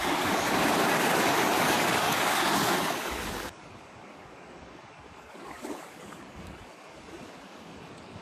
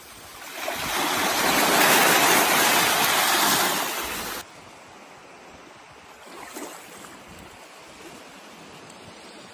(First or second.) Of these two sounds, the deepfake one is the first